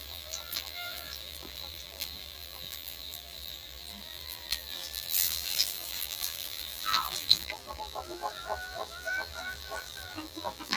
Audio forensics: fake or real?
fake